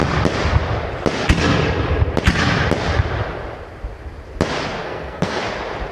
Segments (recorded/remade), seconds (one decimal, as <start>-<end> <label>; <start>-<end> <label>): 0.0-4.8 recorded; 4.8-5.4 remade; 5.4-5.9 recorded